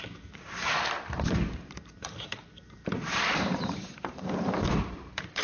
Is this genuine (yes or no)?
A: no